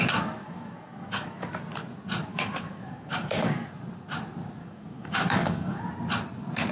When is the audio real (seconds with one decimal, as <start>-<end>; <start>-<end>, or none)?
0.0-0.4; 1.5-2.3; 3.7-4.6; 5.9-6.7